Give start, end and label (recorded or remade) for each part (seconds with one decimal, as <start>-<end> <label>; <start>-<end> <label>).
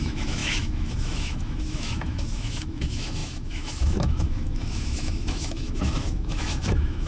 0.0-7.1 remade